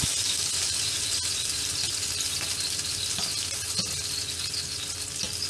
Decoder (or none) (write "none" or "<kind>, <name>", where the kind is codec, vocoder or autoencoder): none